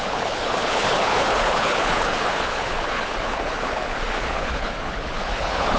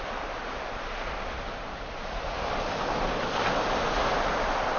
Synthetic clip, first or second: first